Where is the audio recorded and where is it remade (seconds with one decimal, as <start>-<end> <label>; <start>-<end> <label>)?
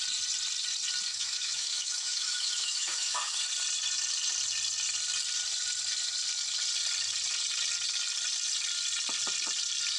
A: 0.0-1.1 recorded; 1.1-3.4 remade; 3.4-10.0 recorded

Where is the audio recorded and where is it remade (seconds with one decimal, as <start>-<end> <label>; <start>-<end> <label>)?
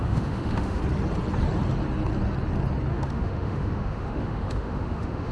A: 0.0-0.8 remade; 0.8-2.9 recorded; 2.9-5.3 remade